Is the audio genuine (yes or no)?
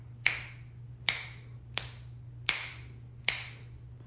yes